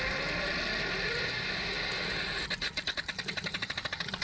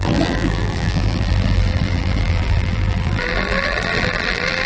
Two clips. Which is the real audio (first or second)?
first